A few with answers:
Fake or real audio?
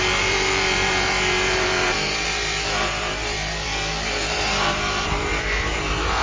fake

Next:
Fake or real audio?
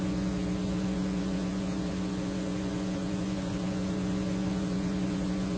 fake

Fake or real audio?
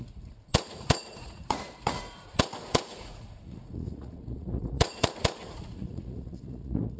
fake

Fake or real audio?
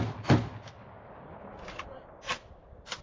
real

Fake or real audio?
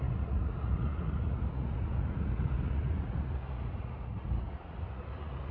fake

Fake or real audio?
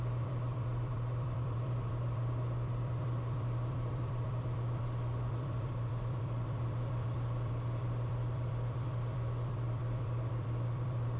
fake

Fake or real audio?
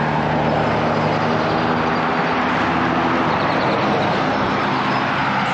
real